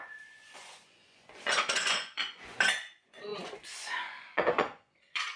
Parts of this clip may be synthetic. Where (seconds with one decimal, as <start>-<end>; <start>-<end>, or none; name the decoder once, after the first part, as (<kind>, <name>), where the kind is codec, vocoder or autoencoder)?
0.0-5.4 (vocoder, Vocos)